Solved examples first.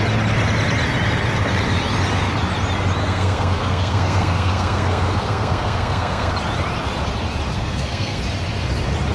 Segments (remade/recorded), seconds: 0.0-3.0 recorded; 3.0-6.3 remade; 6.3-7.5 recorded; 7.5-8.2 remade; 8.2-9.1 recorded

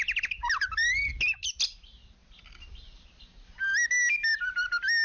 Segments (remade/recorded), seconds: 0.0-5.0 recorded

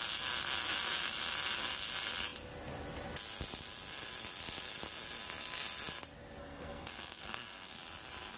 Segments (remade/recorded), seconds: 0.0-6.4 recorded; 6.4-7.7 remade; 7.7-8.4 recorded

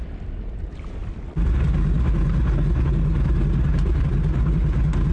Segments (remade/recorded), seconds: 0.0-5.1 recorded

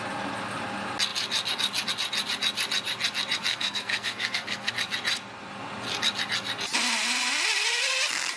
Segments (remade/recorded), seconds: 0.0-3.5 recorded; 3.5-4.7 remade; 4.7-8.4 recorded

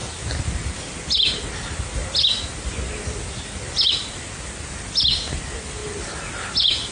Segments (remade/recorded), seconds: 0.0-6.9 recorded

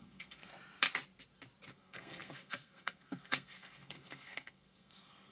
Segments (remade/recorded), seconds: 0.0-0.5 remade; 0.5-1.7 recorded; 1.7-5.3 remade

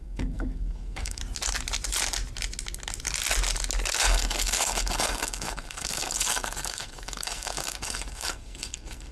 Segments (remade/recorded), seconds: 0.0-1.2 remade; 1.2-4.0 recorded; 4.0-9.1 remade